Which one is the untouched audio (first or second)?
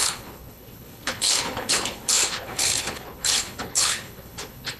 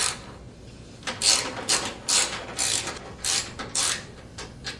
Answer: second